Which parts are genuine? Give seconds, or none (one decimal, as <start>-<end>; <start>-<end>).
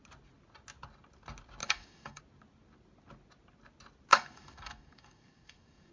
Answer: 0.0-1.6; 2.2-4.1